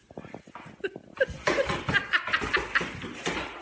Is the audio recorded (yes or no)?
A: yes